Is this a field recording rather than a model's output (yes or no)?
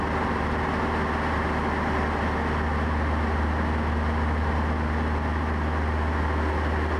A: yes